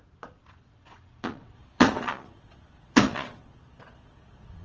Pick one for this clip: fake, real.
fake